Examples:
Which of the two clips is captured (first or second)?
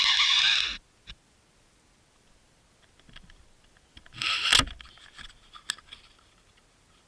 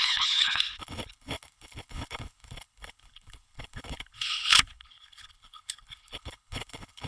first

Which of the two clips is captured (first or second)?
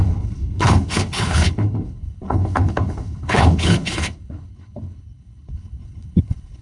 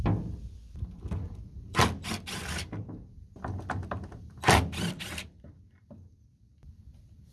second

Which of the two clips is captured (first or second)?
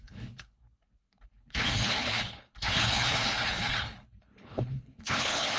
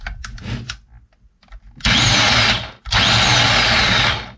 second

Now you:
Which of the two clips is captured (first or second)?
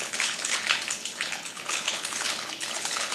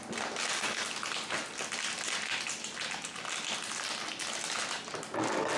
second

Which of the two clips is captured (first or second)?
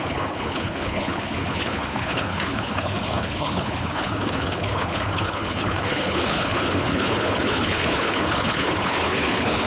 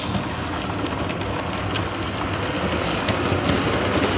second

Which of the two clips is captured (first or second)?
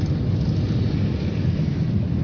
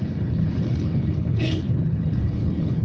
first